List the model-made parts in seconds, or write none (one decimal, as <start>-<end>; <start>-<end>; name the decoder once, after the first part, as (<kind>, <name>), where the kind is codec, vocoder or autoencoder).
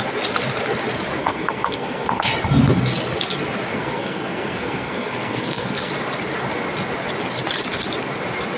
1.2-2.3 (codec, SNAC); 3.7-5.9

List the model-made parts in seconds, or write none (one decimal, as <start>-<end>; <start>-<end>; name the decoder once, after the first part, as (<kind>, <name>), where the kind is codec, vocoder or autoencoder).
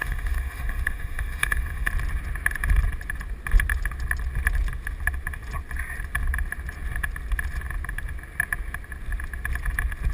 0.0-1.9 (autoencoder, DAC-VAE)